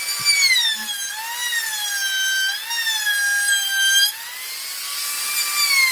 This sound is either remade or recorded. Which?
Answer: recorded